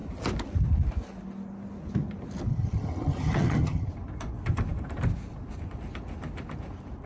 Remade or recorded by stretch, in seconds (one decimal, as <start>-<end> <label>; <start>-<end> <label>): 0.0-2.5 recorded; 2.5-3.9 remade; 3.9-7.1 recorded